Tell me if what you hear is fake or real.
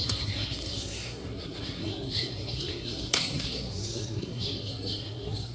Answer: fake